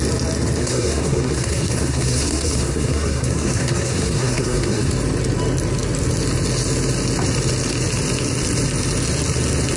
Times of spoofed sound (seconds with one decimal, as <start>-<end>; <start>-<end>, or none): 0.6-4.9